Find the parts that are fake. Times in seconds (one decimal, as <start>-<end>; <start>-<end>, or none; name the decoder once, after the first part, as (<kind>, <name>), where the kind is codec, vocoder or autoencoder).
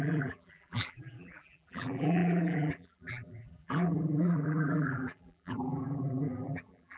0.0-7.0 (vocoder, BigVGAN v2)